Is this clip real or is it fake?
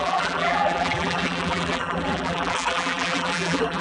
fake